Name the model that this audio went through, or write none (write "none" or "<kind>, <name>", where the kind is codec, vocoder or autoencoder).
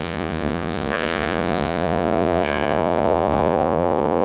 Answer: vocoder, Vocos